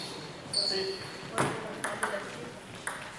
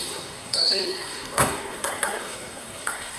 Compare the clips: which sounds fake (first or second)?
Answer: second